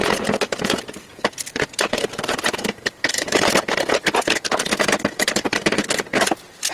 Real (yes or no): no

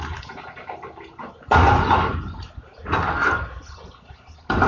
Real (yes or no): yes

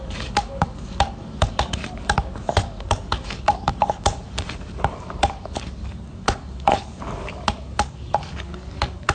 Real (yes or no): no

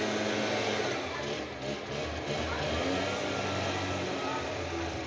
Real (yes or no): yes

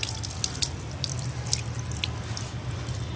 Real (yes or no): yes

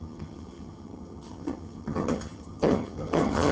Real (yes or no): no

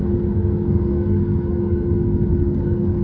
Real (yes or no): no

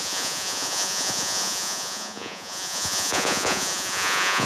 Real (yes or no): no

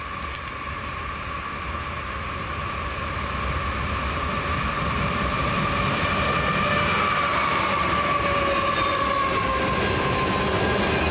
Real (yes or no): yes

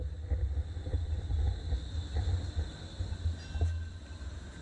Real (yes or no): yes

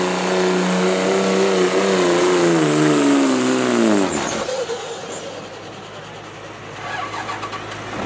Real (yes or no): yes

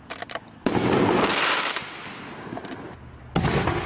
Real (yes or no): yes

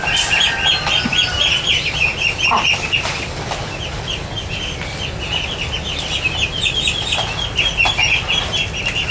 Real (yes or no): yes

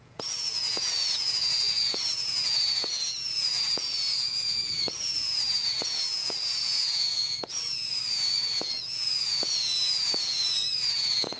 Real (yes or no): no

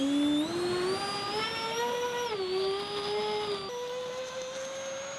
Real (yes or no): yes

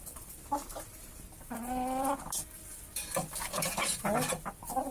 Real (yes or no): yes